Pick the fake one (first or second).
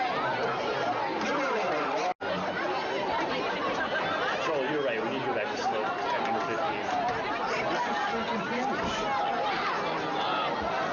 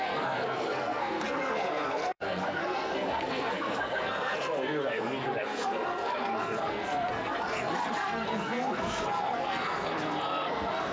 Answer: second